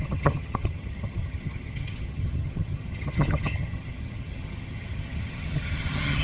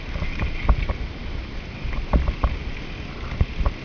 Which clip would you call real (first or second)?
second